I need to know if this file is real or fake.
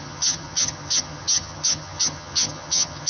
fake